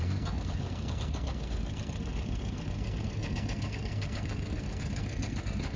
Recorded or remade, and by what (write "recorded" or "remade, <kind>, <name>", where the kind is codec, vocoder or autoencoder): remade, codec, SNAC